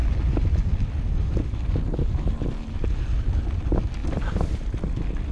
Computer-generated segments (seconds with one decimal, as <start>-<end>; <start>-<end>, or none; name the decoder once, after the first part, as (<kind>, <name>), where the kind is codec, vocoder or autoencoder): 4.0-5.3 (vocoder, BigVGAN v2)